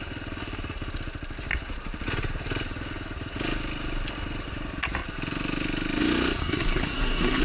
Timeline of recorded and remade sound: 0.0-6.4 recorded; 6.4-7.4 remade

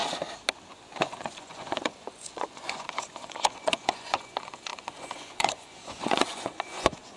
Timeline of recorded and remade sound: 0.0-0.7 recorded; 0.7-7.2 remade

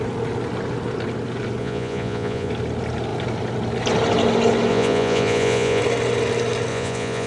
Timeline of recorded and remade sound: 0.0-1.6 recorded; 1.6-2.5 remade; 2.5-4.7 recorded; 4.7-5.8 remade; 5.8-6.7 recorded; 6.7-7.3 remade

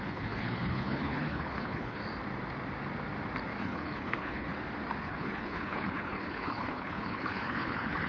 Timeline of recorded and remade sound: 0.0-2.0 remade; 2.0-3.6 recorded; 3.6-4.5 remade; 4.5-5.0 recorded; 5.0-8.1 remade